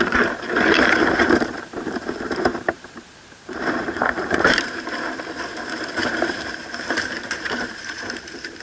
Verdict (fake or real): fake